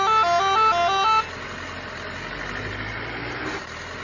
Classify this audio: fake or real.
real